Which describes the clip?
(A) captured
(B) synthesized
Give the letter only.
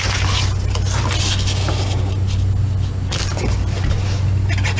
A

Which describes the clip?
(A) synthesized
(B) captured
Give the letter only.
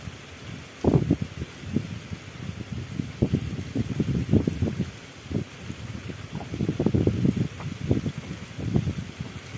B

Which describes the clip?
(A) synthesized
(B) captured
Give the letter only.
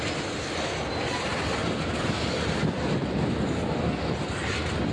B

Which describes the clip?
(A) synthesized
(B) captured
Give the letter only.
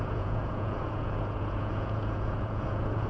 A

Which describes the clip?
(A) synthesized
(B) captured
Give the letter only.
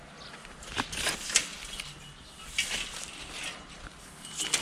B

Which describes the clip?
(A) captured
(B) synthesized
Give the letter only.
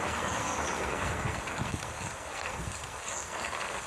B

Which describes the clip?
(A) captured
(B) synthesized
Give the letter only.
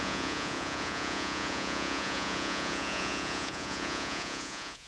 B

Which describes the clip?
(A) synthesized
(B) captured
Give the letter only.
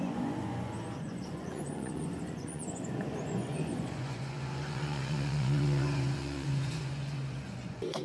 A